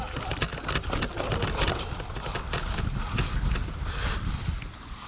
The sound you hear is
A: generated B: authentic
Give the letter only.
B